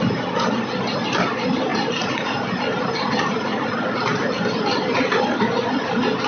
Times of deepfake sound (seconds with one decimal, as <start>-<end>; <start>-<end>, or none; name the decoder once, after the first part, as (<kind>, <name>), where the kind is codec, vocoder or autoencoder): 1.7-3.6 (vocoder, BigVGAN v2); 4.1-5.4